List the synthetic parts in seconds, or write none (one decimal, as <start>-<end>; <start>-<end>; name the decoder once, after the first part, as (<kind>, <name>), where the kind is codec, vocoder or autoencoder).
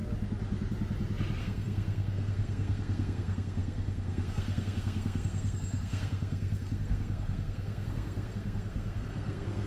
1.4-9.7 (codec, SNAC)